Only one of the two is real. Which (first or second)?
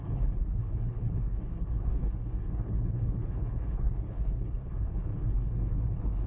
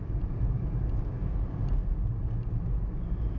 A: second